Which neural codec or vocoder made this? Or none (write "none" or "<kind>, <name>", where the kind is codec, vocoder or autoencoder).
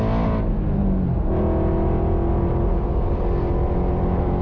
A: none